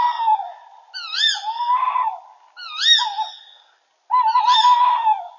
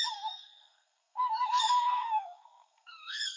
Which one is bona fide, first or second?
first